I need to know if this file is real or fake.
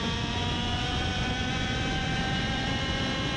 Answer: fake